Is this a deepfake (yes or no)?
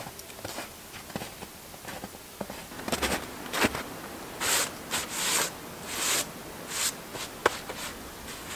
no